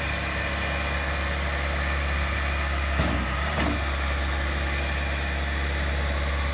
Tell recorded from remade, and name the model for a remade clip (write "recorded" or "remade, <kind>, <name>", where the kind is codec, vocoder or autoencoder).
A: recorded